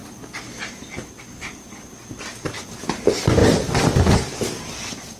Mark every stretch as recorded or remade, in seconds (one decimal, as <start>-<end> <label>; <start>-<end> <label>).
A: 0.0-5.2 recorded